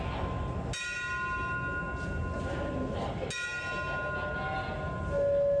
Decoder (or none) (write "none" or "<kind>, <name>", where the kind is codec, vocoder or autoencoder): none